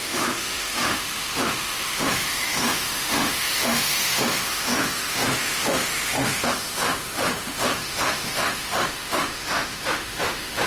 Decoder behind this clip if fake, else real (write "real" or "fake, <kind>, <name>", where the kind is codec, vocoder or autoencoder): fake, autoencoder, DAC-VAE